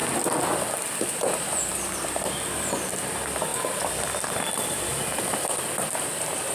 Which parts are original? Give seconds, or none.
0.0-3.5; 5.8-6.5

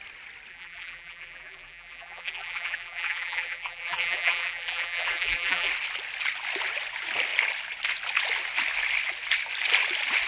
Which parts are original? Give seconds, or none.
0.0-0.5; 5.7-10.3

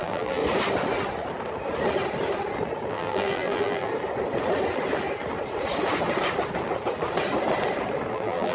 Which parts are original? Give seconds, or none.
0.4-2.9; 3.9-8.1

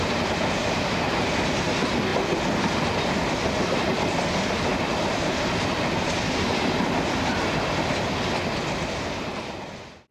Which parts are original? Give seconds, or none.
0.0-10.1